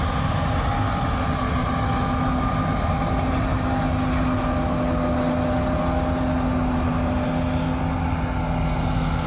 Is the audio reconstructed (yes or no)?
no